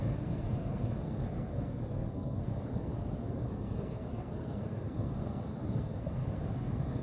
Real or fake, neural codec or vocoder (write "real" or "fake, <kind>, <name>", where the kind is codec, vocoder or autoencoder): fake, codec, SNAC